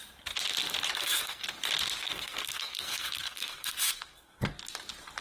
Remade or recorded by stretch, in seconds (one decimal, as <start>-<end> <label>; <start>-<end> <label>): 0.0-0.9 recorded; 0.9-1.4 remade; 1.4-2.0 recorded; 2.0-4.5 remade; 4.5-5.2 recorded